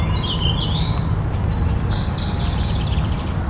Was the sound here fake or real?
real